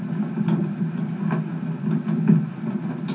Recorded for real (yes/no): yes